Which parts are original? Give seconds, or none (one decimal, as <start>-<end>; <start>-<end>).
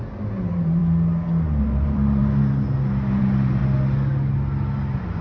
0.8-1.6; 2.2-3.2; 3.6-5.2